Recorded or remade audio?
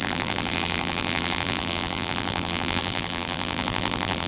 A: remade